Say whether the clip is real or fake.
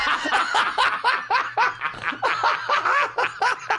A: real